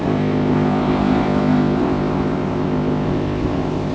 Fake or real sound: fake